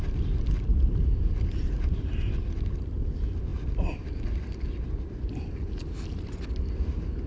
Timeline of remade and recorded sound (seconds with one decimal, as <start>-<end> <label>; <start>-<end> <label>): 0.0-7.3 recorded